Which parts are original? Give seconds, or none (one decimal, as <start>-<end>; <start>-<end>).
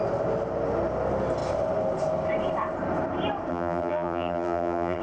0.0-3.5